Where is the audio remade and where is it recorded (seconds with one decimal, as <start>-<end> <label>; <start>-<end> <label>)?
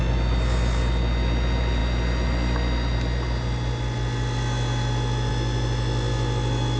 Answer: 0.0-6.8 recorded